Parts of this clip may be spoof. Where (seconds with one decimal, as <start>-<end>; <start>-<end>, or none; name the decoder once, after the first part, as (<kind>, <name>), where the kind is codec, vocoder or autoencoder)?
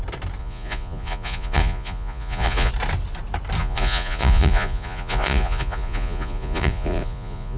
0.4-2.7 (vocoder, Vocos); 3.6-7.6